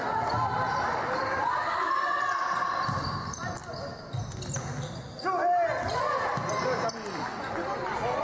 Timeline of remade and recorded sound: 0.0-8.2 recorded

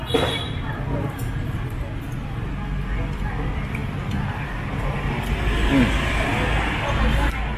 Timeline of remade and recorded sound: 0.0-7.6 recorded